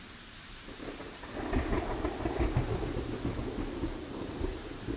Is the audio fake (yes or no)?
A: no